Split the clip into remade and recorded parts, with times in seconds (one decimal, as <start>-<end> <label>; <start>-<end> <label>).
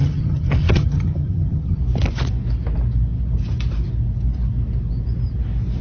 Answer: 0.0-1.8 remade; 1.8-5.8 recorded